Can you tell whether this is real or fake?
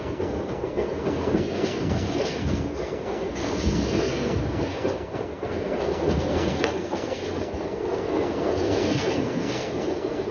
fake